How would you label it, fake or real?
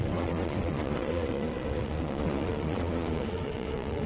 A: fake